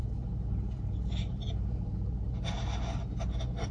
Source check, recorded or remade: recorded